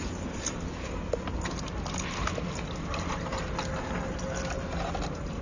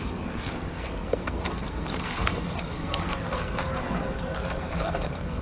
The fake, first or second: second